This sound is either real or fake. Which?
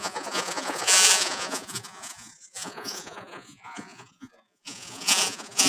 fake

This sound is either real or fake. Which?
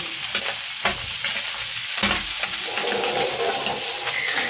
real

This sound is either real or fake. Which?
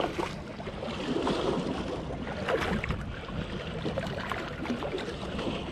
real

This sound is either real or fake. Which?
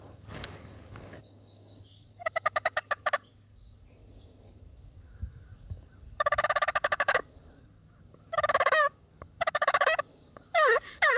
fake